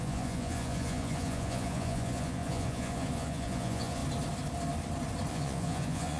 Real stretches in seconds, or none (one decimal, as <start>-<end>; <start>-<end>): 4.0-5.3